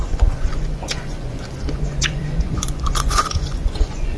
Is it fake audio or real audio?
fake